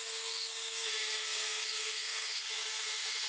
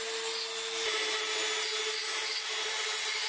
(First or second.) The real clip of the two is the second